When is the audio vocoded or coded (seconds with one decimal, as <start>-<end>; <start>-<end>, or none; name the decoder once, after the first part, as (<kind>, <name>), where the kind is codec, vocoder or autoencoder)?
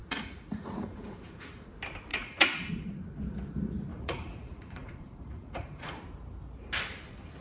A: 0.0-1.7 (vocoder, Vocos); 2.1-2.7; 3.9-6.0